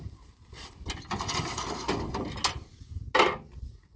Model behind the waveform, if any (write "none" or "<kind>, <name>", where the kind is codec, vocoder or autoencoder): none